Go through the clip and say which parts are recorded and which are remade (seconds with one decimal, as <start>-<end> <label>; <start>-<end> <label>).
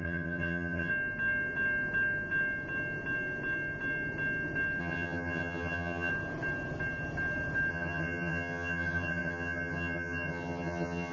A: 0.0-0.9 remade; 0.9-4.8 recorded; 4.8-6.1 remade; 6.1-7.7 recorded; 7.7-11.1 remade